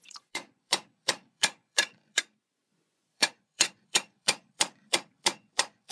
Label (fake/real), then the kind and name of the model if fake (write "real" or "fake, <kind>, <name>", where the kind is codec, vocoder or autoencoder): fake, vocoder, Vocos